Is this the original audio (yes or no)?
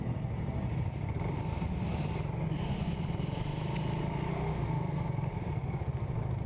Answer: yes